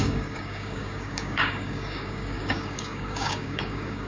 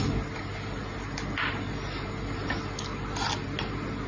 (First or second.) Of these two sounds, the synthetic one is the first